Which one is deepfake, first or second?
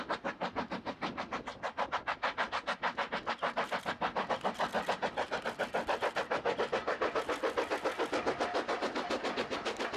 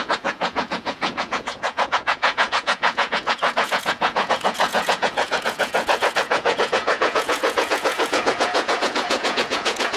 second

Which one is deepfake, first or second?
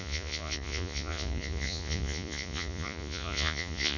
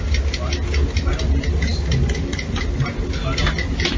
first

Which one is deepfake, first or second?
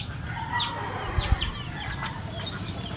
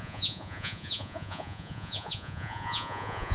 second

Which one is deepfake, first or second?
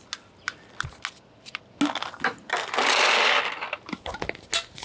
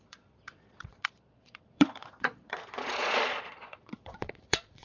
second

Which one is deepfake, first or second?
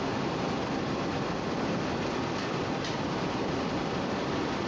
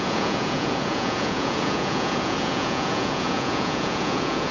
second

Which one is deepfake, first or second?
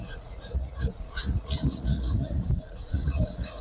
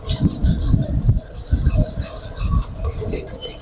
first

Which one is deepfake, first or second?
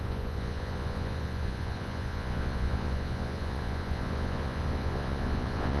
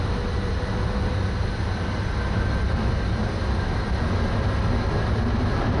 first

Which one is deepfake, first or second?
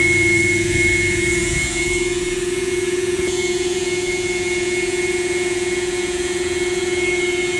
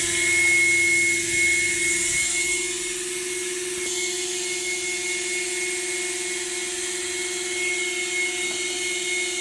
first